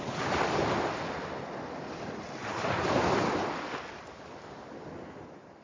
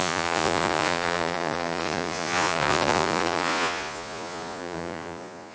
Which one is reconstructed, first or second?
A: second